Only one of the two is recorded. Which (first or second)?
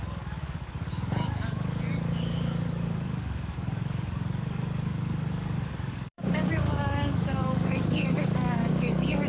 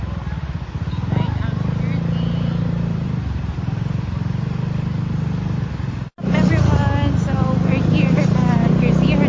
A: second